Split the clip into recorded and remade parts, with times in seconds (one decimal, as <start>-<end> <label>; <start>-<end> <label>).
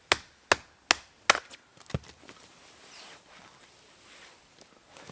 0.0-5.1 recorded